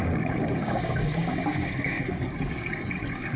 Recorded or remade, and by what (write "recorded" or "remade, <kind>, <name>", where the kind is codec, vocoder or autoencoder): remade, codec, DAC